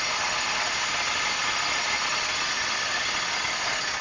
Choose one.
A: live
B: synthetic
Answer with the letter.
A